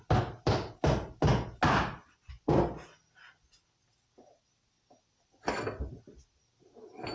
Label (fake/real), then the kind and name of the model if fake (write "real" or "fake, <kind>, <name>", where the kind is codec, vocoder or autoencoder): real